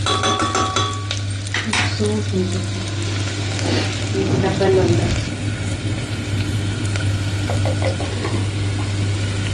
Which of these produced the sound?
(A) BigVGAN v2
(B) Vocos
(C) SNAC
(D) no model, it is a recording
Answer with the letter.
D